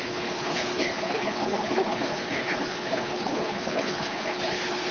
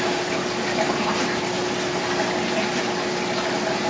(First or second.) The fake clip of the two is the first